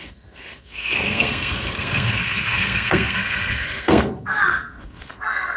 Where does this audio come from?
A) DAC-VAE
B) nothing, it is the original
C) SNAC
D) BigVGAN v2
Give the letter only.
C